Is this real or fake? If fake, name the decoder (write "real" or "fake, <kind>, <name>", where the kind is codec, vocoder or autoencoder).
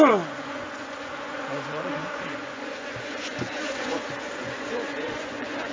fake, vocoder, Vocos